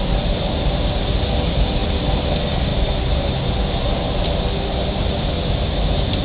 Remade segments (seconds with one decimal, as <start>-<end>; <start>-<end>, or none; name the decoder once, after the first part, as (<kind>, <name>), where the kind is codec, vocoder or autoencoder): none